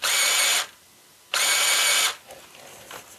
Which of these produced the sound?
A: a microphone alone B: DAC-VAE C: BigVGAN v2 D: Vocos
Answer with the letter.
A